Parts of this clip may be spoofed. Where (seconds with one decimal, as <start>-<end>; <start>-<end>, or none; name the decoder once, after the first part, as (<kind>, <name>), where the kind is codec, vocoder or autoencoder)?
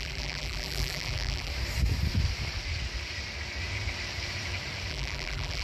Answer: 0.0-1.5 (vocoder, BigVGAN v2); 4.9-5.6